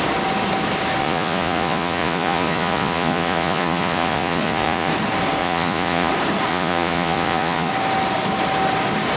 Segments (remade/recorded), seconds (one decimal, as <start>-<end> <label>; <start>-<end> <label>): 0.0-1.0 recorded; 1.0-4.9 remade; 4.9-5.4 recorded; 5.4-6.1 remade; 6.1-6.5 recorded; 6.5-7.7 remade; 7.7-9.2 recorded